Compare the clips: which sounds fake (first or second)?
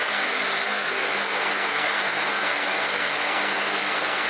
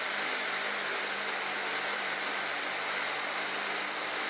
first